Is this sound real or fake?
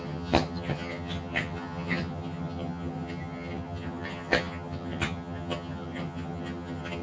fake